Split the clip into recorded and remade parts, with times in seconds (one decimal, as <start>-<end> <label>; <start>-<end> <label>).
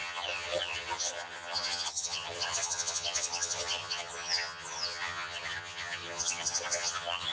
0.0-7.3 remade